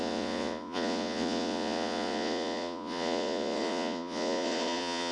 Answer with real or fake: fake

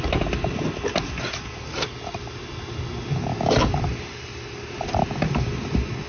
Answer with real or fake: real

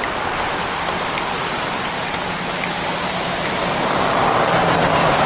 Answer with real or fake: real